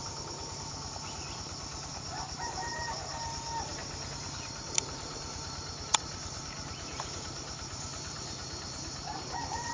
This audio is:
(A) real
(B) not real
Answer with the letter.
B